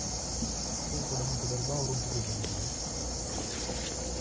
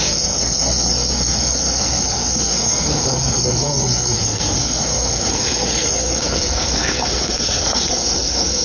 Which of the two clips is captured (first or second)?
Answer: first